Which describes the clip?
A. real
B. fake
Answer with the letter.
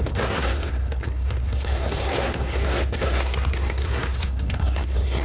B